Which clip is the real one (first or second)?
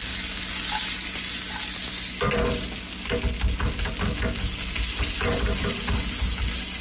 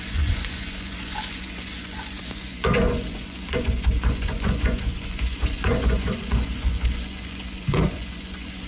first